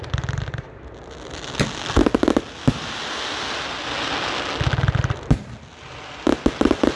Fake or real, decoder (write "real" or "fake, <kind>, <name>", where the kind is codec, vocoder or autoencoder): real